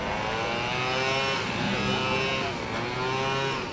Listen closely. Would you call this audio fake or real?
real